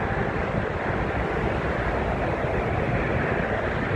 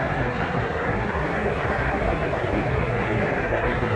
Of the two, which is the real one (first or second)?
first